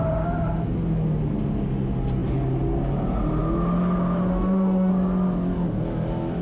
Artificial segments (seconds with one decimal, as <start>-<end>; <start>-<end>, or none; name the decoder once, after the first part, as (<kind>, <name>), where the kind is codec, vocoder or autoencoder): 4.3-4.9 (autoencoder, DAC-VAE)

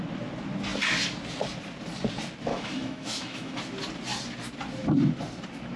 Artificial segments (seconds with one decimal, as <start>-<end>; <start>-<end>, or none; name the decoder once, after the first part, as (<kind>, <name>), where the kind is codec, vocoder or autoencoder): 2.5-3.6 (autoencoder, DAC-VAE)